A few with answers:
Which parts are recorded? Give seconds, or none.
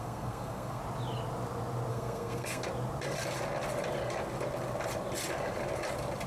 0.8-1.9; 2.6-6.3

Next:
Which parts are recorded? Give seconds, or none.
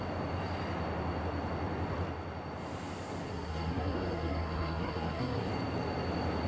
0.0-3.3; 5.5-6.5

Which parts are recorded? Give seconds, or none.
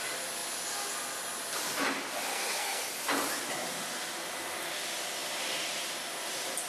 0.0-2.3; 2.9-6.7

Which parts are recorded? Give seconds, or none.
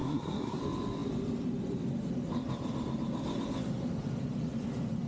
0.6-5.1